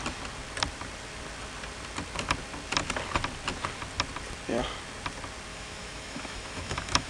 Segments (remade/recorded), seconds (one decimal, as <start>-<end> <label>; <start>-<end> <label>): 0.0-5.5 recorded; 5.5-7.1 remade